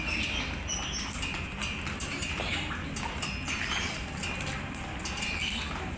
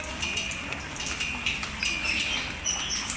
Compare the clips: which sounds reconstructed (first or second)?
second